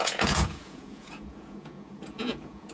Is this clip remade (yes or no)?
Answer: yes